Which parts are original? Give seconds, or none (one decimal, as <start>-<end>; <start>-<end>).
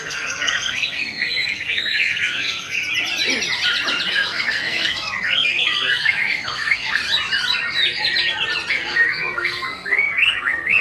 2.8-4.1; 7.0-8.7